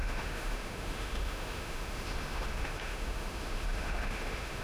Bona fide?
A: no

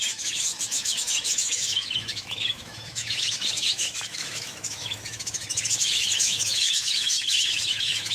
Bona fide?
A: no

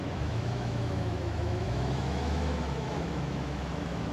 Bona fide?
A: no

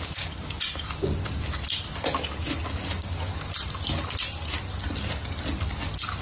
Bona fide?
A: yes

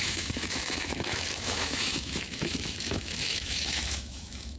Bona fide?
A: no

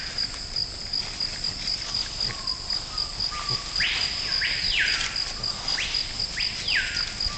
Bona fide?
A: yes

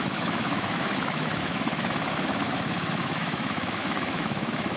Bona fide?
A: no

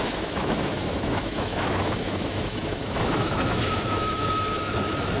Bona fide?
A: no